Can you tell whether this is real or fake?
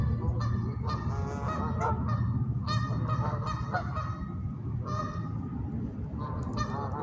real